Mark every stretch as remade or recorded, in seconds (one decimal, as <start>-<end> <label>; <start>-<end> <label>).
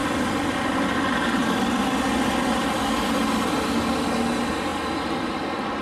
0.0-5.8 recorded